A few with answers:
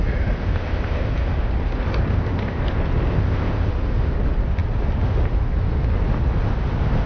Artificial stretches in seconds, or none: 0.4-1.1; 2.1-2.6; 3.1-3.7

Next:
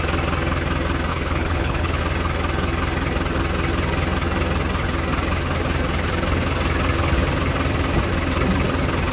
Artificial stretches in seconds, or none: 1.1-2.0

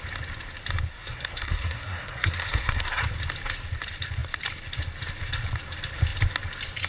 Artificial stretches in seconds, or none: 0.9-3.0

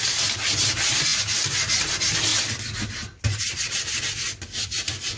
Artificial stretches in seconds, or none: 1.1-1.9

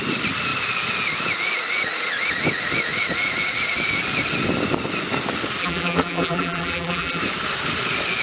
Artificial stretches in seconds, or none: 5.6-7.2